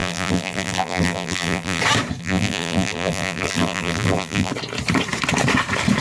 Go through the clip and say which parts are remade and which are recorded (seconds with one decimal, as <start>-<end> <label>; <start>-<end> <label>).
0.0-1.8 remade; 1.8-2.2 recorded; 2.2-4.5 remade; 4.5-6.0 recorded